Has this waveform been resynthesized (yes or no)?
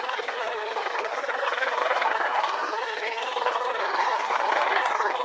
yes